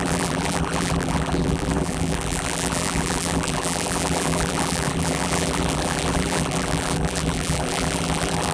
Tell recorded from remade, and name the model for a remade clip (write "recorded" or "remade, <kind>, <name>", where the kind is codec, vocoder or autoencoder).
remade, vocoder, BigVGAN v2